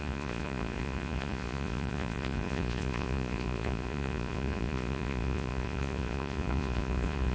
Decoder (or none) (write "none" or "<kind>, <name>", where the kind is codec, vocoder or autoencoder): vocoder, Vocos